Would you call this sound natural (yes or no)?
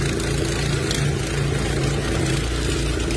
yes